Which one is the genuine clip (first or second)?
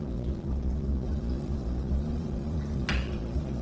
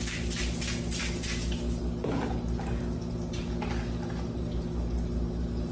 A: second